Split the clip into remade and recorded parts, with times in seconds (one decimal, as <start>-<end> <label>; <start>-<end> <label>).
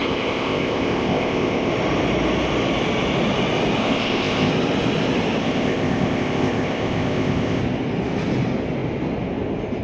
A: 0.0-1.7 remade; 1.7-3.8 recorded; 3.8-4.5 remade; 4.5-5.4 recorded; 5.4-7.6 remade; 7.6-9.8 recorded